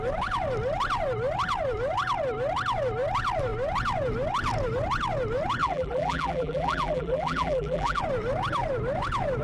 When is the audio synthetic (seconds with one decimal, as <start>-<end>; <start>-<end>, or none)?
5.6-8.0